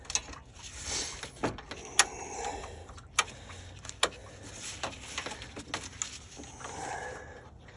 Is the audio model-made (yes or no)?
no